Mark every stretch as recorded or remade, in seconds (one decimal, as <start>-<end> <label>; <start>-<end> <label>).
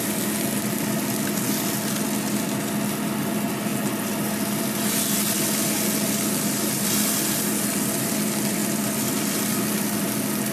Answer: 0.0-8.6 recorded; 8.6-9.4 remade; 9.4-10.5 recorded